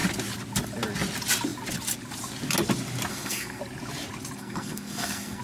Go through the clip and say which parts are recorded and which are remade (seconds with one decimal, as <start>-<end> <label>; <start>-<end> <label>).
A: 0.0-3.1 recorded; 3.1-3.6 remade; 3.6-4.4 recorded; 4.4-5.4 remade